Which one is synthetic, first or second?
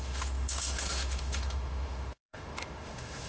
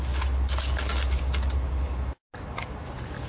first